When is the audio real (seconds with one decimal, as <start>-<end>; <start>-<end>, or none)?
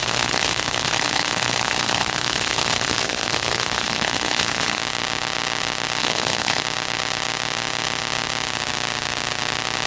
4.8-6.0; 6.6-9.9